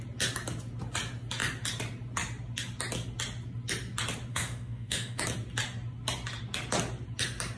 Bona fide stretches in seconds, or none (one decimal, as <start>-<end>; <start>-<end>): 0.0-4.3; 5.2-7.6